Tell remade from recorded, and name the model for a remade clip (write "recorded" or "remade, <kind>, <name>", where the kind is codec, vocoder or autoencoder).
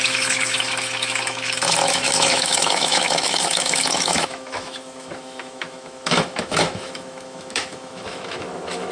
remade, autoencoder, DAC-VAE